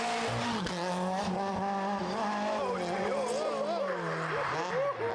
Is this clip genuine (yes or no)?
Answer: yes